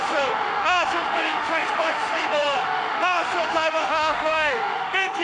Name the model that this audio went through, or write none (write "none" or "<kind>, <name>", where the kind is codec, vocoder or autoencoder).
autoencoder, DAC-VAE